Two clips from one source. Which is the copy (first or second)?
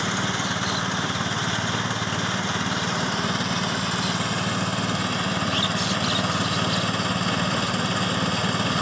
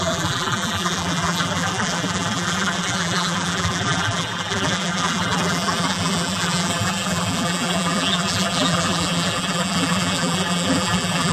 second